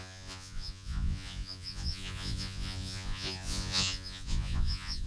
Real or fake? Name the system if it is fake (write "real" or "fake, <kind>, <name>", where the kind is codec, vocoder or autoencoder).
fake, vocoder, Vocos